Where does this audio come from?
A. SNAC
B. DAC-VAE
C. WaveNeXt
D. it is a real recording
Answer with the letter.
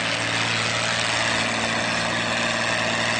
D